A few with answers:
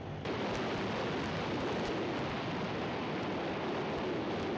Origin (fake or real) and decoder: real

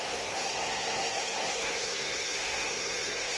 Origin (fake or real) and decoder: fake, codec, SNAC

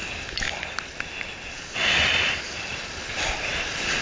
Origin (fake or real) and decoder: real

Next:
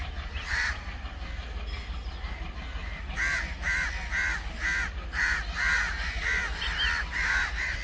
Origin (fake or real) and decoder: real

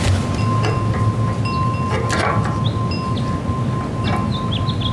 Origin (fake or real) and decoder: real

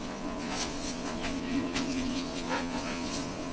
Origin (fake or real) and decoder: fake, vocoder, Vocos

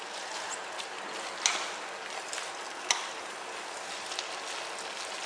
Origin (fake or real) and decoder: real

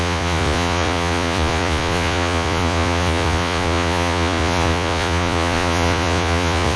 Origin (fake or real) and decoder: fake, vocoder, Vocos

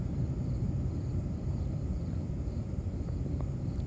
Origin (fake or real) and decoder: fake, vocoder, BigVGAN v2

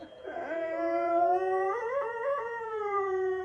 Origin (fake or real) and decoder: fake, vocoder, Vocos